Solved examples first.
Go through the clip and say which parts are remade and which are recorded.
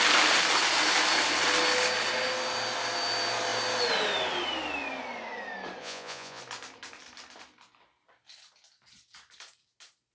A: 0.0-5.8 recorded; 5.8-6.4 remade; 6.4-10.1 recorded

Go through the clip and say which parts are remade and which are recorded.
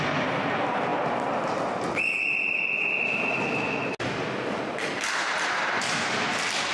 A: 0.0-6.7 recorded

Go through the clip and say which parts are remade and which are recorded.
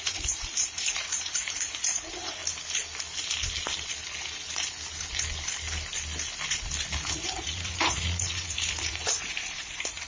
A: 0.0-2.4 remade; 2.4-7.0 recorded; 7.0-10.1 remade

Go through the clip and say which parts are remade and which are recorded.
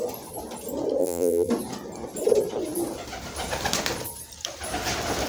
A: 0.0-1.0 recorded; 1.0-1.5 remade; 1.5-5.3 recorded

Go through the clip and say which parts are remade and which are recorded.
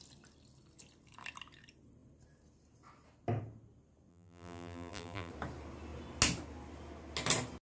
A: 0.0-4.1 recorded; 4.1-5.3 remade; 5.3-7.6 recorded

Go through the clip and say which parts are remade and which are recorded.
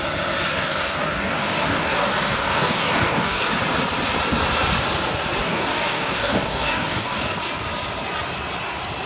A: 0.0-0.5 recorded; 0.5-3.5 remade; 3.5-5.4 recorded; 5.4-7.4 remade; 7.4-9.1 recorded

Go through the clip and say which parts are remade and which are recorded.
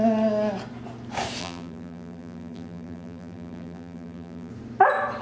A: 0.0-1.4 recorded; 1.4-4.5 remade; 4.5-5.2 recorded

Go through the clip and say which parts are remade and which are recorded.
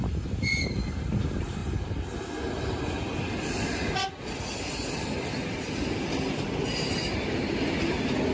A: 0.0-8.3 recorded